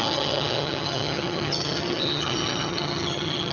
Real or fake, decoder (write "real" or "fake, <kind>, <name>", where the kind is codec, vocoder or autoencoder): fake, vocoder, HiFi-GAN